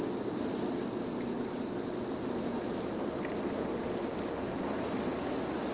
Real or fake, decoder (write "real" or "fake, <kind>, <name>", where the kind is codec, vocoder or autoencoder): real